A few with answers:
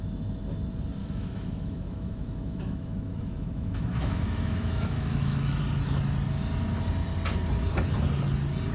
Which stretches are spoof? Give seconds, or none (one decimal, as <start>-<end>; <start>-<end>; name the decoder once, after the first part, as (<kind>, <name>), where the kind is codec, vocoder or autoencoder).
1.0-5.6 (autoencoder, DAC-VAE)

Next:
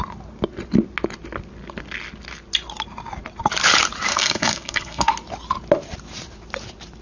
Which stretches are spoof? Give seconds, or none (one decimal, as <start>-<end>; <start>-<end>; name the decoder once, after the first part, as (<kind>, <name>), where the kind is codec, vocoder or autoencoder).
4.1-5.1 (codec, SNAC)

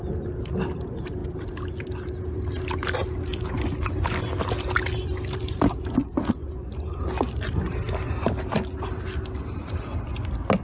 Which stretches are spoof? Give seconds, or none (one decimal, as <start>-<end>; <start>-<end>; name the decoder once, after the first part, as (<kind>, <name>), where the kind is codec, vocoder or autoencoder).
6.0-7.0 (vocoder, Vocos)